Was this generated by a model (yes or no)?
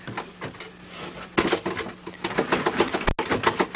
no